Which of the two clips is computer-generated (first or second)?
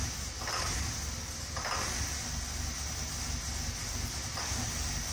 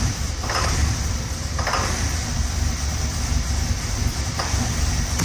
second